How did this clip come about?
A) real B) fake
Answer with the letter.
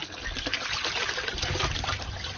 A